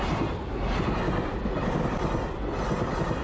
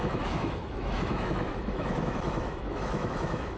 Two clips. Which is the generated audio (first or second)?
second